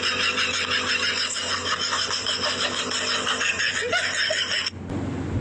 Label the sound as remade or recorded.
recorded